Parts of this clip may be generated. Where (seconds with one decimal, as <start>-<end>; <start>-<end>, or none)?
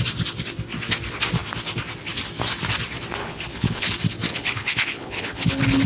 3.2-3.9; 4.3-5.9